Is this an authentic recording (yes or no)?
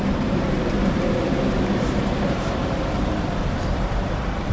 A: no